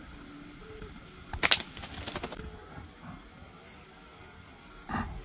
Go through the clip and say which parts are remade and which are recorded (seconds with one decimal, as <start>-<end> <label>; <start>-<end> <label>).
0.0-5.2 recorded